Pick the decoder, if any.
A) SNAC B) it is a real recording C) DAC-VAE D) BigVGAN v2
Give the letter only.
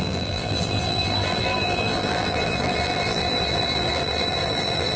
D